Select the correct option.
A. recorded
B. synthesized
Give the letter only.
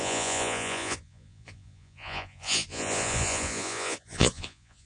B